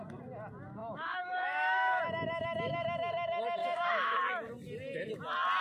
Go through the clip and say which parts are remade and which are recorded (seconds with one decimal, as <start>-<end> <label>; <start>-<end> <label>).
0.0-0.8 recorded; 0.8-2.0 remade; 2.0-3.6 recorded; 3.6-4.2 remade; 4.2-5.6 recorded